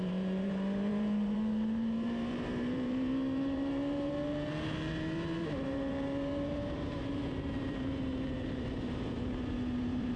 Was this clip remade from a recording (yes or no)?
yes